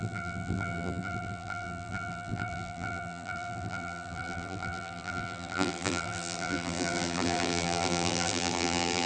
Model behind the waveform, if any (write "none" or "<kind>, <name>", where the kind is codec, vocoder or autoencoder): vocoder, BigVGAN v2